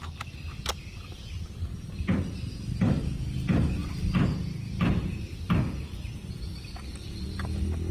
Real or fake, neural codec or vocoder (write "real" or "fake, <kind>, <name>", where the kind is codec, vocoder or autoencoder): real